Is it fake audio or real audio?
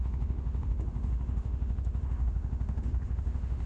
fake